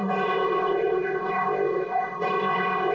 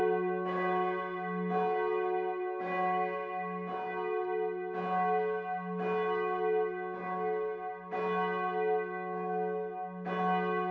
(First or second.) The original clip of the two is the second